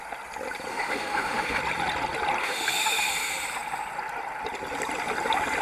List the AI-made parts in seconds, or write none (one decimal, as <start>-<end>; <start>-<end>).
0.7-1.6; 2.4-3.1